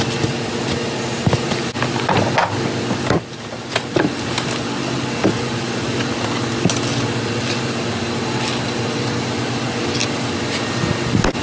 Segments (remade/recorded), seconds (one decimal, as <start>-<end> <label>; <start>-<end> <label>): 0.0-11.4 recorded